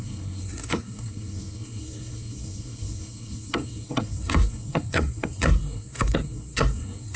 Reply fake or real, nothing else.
fake